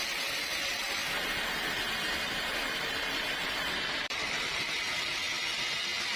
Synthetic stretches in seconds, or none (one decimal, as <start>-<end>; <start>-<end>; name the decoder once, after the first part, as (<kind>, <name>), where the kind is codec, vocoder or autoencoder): 1.0-4.7 (vocoder, BigVGAN v2)